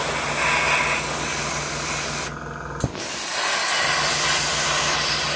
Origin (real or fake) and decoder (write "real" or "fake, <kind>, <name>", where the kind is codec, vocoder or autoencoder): real